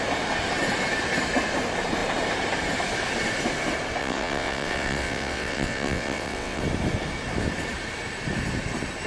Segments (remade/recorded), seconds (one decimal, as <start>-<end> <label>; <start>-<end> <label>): 0.0-4.0 recorded; 4.0-6.6 remade; 6.6-9.1 recorded